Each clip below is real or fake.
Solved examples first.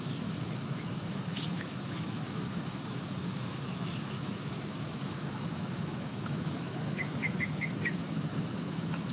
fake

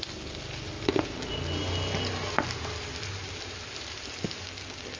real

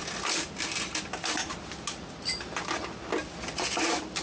real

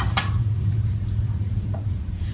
fake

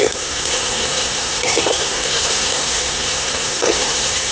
fake